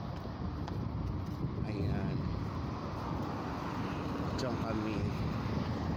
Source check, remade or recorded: recorded